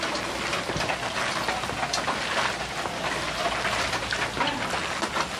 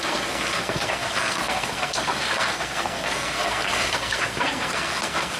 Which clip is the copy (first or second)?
second